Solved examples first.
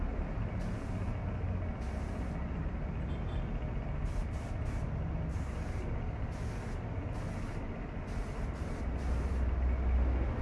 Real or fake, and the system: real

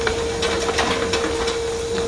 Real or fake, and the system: real